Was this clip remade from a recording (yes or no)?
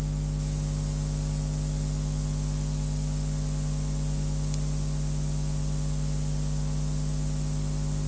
no